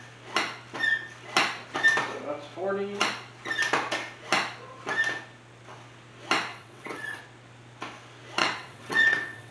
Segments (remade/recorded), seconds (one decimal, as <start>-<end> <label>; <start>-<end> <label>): 0.0-6.5 recorded; 6.5-7.2 remade; 7.2-8.4 recorded; 8.4-9.5 remade